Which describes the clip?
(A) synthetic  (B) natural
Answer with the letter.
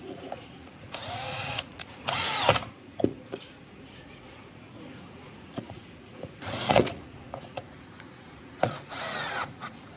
A